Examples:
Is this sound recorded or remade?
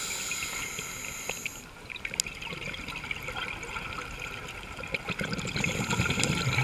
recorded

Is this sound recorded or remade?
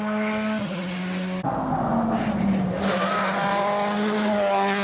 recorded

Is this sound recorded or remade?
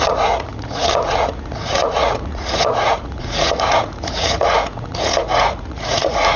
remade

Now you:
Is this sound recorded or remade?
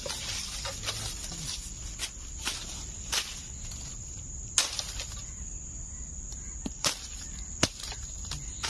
recorded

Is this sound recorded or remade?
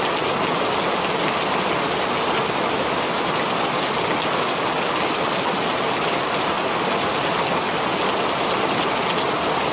recorded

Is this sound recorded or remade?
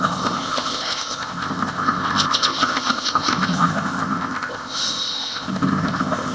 remade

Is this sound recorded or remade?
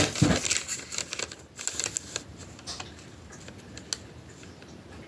recorded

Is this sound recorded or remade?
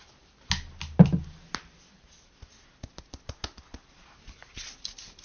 recorded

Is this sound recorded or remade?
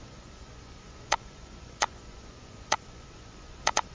remade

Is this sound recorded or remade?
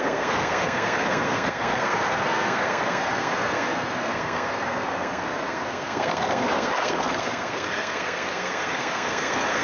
remade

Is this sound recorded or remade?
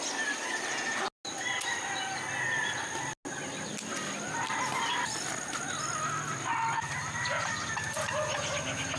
recorded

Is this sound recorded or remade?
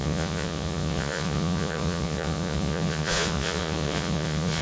remade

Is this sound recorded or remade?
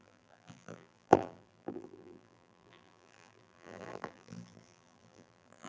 remade